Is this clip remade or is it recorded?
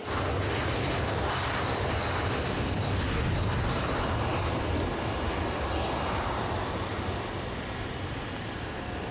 recorded